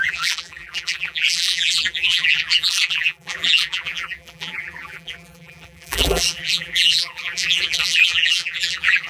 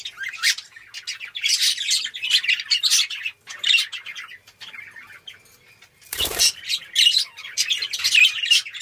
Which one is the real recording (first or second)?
second